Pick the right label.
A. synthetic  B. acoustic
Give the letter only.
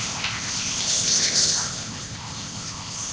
A